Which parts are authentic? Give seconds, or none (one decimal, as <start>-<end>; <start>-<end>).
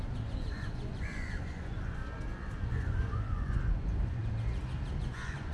2.0-2.6; 4.2-5.0